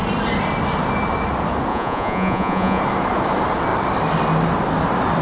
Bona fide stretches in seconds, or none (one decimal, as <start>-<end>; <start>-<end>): 0.0-1.7; 2.8-5.2